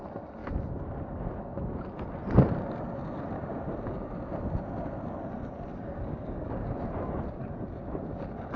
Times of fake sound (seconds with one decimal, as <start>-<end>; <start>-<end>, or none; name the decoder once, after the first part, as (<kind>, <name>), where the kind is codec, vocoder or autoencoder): 5.7-6.8 (codec, DAC)